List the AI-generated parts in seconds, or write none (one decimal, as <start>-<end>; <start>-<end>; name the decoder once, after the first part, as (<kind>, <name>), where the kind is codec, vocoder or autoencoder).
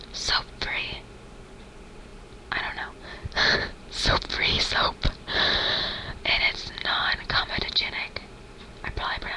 none